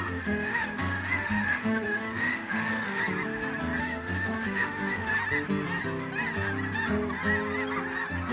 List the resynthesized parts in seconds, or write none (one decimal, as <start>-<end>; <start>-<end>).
0.0-3.0; 3.8-5.1